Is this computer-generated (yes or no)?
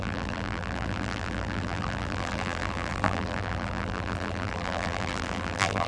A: yes